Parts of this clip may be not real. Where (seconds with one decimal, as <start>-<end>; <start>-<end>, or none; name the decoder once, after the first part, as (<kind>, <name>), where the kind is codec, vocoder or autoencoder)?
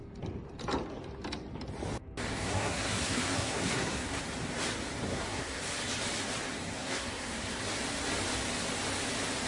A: 2.3-4.2 (codec, SNAC); 5.1-5.6; 6.8-7.6